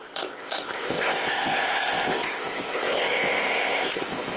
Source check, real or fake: fake